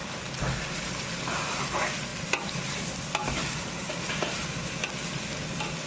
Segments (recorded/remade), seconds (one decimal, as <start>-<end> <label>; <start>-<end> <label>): 0.0-5.9 recorded